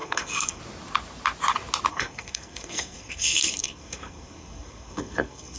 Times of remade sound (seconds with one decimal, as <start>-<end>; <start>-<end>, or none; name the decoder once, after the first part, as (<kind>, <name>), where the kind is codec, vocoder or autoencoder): 0.0-0.6 (codec, SNAC); 1.9-5.6